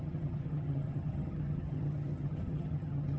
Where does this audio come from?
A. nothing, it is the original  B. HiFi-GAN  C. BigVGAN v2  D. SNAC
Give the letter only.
B